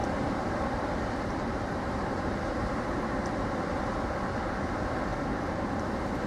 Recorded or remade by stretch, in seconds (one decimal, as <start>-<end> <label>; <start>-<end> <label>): 0.0-3.7 remade; 3.7-5.1 recorded; 5.1-5.8 remade; 5.8-6.3 recorded